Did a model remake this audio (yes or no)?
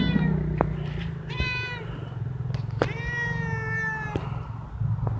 no